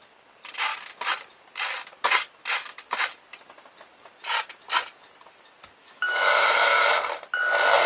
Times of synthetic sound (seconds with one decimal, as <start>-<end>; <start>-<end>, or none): 5.8-6.9